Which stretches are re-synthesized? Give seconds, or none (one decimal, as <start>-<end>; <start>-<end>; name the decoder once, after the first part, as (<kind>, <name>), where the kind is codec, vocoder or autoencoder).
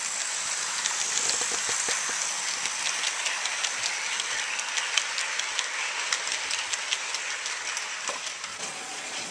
8.5-9.3 (vocoder, Vocos)